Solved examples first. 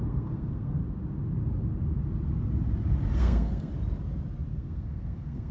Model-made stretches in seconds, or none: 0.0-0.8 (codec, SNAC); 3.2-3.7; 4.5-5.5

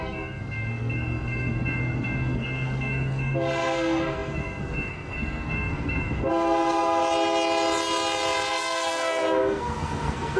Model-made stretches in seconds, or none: 0.0-7.0 (codec, SNAC); 8.5-10.4

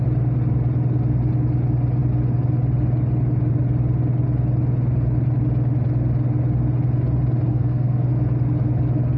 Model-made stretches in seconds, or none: 7.5-8.1 (codec, SNAC)

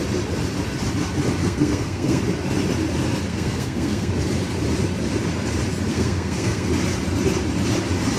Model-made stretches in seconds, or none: 1.4-2.2 (codec, SNAC); 3.3-4.1; 5.9-6.7

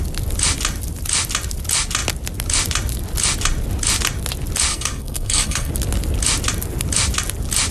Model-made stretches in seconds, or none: 4.7-5.7 (codec, SNAC)

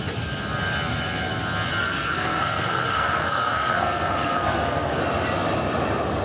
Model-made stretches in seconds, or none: 1.8-5.0 (codec, SNAC)